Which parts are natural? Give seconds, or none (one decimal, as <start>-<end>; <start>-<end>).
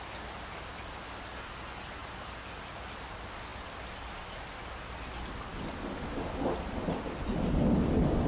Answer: 0.0-8.3